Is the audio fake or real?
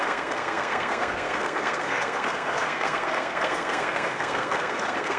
fake